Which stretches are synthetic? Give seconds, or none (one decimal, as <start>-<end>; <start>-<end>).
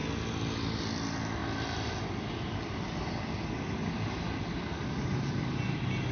none